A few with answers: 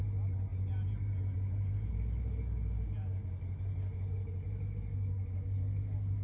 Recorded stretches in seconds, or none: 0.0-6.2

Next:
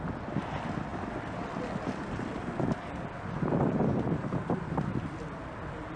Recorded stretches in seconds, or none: 0.0-3.9; 4.7-6.0

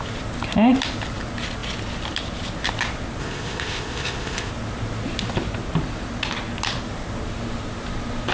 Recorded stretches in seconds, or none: 0.0-3.2; 4.5-8.3

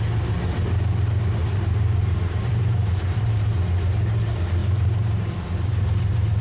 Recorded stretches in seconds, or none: 0.0-1.4; 3.5-4.6

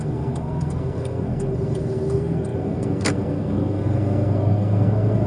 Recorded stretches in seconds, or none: none